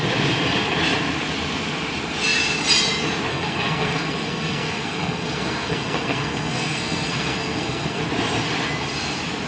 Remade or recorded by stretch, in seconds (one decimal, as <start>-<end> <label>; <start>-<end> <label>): 0.0-3.3 recorded; 3.3-8.0 remade; 8.0-9.5 recorded